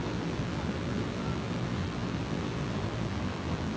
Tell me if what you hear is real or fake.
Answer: fake